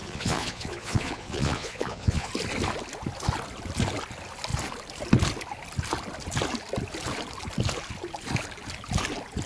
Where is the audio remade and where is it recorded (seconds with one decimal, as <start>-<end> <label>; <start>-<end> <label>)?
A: 0.0-2.3 remade; 2.3-9.5 recorded